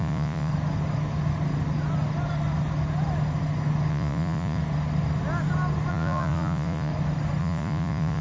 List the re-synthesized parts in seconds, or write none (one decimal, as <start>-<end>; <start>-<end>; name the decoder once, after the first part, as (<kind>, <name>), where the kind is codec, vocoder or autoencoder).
0.0-0.5 (vocoder, Vocos); 3.9-4.6; 5.9-6.9; 7.4-8.2